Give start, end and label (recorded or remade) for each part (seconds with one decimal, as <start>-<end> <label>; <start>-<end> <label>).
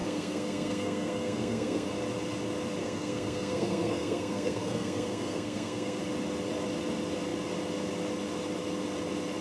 0.0-1.9 remade; 1.9-2.8 recorded; 2.8-6.0 remade; 6.0-9.4 recorded